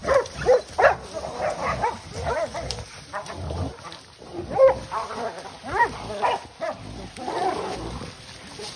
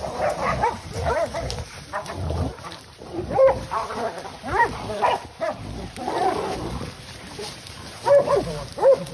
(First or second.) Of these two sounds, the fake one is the second